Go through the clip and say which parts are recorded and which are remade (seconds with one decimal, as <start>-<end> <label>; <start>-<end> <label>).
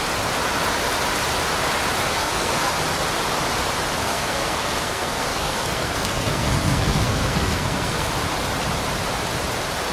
0.0-2.1 recorded; 2.1-2.7 remade; 2.7-4.0 recorded; 4.0-8.1 remade; 8.1-9.9 recorded